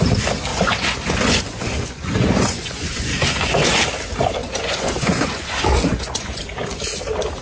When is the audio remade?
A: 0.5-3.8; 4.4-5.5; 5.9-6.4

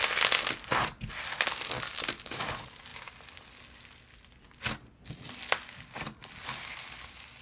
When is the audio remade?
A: none